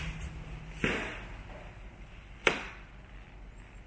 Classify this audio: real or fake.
real